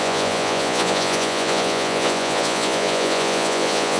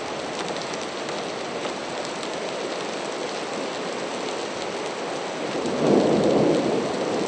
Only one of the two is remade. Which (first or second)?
first